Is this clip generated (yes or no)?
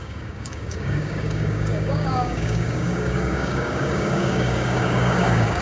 yes